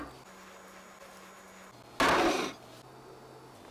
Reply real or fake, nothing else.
real